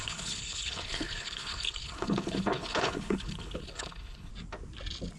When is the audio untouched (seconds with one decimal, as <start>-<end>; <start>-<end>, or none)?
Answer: 4.3-5.2